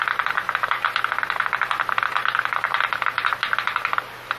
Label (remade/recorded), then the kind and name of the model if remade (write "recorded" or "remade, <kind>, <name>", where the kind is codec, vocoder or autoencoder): recorded